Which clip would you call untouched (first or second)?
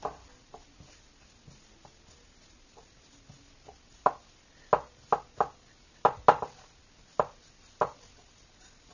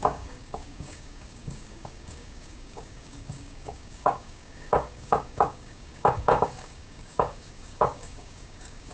first